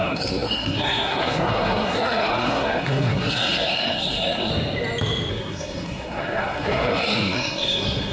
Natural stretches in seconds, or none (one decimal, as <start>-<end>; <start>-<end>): 4.5-5.3